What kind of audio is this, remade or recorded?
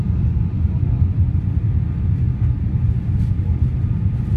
recorded